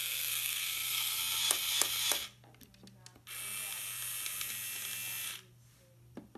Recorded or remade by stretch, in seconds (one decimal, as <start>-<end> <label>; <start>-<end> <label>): 0.0-1.2 remade; 1.2-6.4 recorded